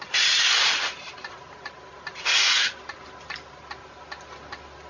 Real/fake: real